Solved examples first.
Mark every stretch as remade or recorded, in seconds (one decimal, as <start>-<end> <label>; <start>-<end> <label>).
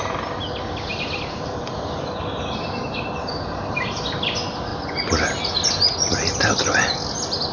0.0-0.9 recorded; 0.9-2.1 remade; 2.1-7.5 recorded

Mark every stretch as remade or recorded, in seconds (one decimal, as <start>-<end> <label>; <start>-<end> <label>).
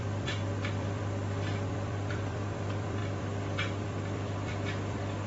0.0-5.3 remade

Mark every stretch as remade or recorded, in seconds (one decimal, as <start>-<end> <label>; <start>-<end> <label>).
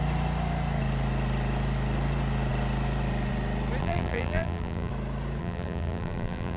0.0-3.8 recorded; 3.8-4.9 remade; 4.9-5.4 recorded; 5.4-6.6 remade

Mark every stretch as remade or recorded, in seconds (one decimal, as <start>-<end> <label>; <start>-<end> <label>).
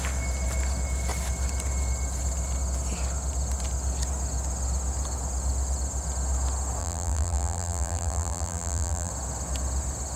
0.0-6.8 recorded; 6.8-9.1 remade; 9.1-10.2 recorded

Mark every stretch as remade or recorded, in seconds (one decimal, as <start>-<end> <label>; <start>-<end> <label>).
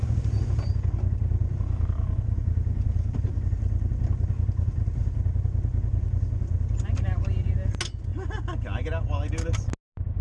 0.0-1.4 recorded; 1.4-3.3 remade; 3.3-10.2 recorded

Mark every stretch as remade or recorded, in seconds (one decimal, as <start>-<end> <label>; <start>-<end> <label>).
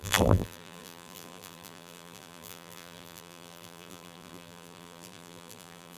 0.0-6.0 remade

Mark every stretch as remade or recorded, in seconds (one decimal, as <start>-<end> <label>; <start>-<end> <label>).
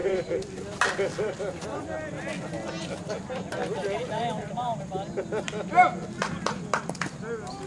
0.0-1.8 remade; 1.8-7.7 recorded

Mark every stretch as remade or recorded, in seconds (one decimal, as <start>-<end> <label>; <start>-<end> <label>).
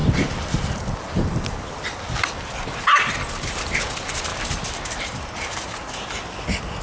0.0-4.3 recorded; 4.3-5.9 remade; 5.9-6.8 recorded